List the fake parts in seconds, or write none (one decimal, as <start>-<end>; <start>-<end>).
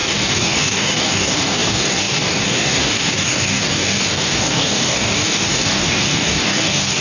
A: 0.0-7.0